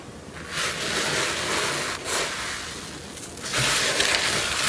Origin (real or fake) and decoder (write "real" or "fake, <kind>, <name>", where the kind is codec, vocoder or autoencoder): real